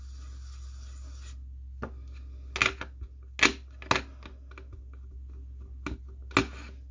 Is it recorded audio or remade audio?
recorded